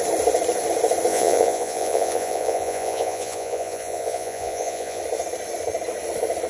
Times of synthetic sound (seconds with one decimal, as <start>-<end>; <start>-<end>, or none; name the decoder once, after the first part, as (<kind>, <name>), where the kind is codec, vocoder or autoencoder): 1.1-5.0 (vocoder, Vocos)